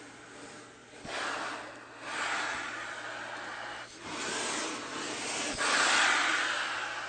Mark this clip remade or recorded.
recorded